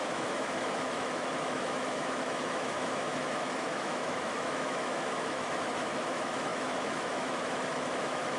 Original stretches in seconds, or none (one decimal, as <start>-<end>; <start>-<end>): none